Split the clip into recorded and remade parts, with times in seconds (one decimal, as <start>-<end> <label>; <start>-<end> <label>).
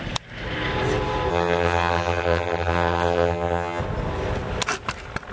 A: 0.0-1.3 recorded; 1.3-3.8 remade; 3.8-5.3 recorded